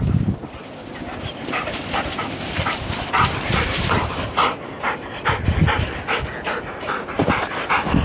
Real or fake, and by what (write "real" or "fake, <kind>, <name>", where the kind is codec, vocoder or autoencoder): real